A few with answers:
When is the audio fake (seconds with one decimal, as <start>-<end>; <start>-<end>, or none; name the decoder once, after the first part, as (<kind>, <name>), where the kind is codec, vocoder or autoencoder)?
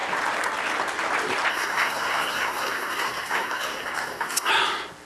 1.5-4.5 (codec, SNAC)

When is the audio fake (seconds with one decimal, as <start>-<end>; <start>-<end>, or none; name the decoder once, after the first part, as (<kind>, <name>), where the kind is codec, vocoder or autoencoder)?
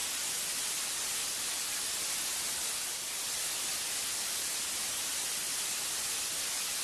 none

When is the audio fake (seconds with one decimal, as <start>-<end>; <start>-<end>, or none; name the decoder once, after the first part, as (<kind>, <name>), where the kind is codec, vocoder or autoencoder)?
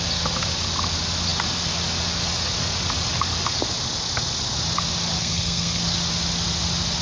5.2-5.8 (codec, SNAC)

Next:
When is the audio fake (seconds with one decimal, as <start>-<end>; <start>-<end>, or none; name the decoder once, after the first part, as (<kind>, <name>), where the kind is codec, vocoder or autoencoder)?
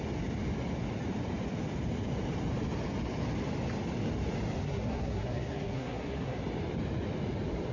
4.6-6.4 (codec, SNAC)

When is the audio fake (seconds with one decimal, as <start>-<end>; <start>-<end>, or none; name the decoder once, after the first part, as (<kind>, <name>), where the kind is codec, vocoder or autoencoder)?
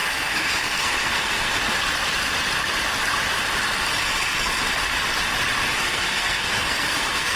0.0-1.6 (codec, SNAC); 5.8-7.4